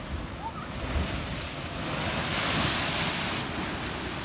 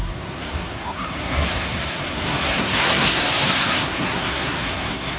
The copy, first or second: second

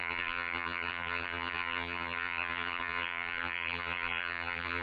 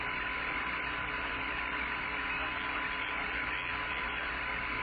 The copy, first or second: first